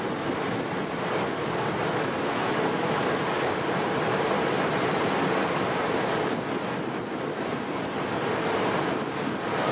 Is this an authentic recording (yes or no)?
yes